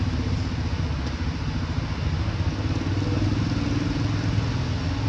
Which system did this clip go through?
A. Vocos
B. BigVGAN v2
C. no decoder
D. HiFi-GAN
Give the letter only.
C